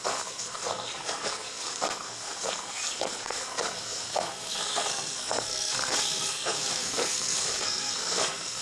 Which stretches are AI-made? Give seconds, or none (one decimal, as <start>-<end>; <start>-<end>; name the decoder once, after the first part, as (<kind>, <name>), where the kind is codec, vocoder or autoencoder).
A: 0.0-8.6 (codec, SNAC)